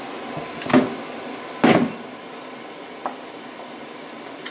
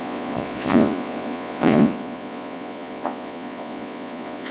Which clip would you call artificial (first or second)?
second